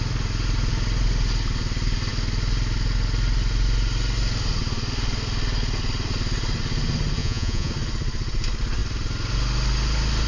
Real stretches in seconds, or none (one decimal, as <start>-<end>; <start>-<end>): 0.0-7.2; 7.7-10.3